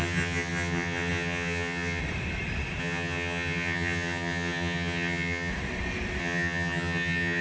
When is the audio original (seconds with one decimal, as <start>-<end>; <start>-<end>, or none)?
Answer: 2.0-2.8; 5.5-6.2